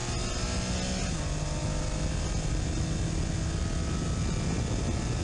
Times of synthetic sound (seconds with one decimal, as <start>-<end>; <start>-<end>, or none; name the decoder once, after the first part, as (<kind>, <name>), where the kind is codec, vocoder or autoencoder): none